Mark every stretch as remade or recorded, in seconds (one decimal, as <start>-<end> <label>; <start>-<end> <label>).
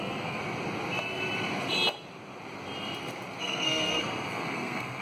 0.0-0.4 remade; 0.4-3.4 recorded; 3.4-5.0 remade